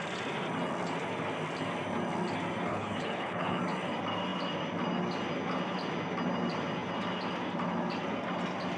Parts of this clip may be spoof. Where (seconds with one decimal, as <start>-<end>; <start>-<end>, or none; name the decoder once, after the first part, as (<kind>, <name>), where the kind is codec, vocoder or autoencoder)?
2.7-3.6 (codec, HILCodec)